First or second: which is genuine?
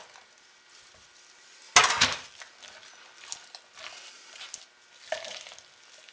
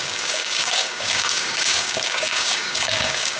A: first